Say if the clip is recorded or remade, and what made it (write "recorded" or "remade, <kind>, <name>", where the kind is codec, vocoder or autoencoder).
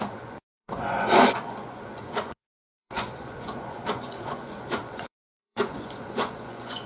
remade, vocoder, Vocos